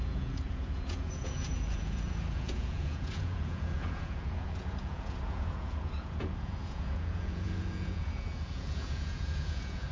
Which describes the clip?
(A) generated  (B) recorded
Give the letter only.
A